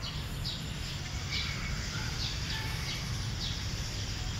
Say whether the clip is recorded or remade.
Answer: remade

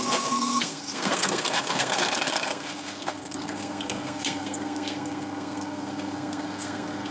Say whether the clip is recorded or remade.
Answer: remade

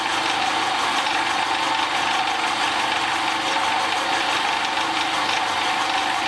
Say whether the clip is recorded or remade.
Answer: recorded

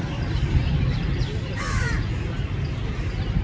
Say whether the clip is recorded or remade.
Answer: recorded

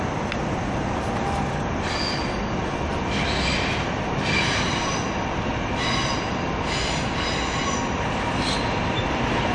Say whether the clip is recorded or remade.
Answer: recorded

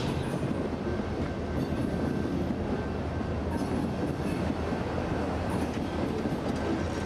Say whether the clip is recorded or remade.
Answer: recorded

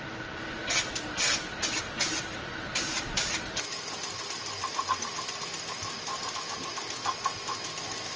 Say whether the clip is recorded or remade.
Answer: recorded